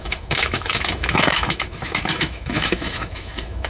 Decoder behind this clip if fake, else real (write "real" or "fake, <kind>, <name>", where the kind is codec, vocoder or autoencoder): fake, autoencoder, DAC-VAE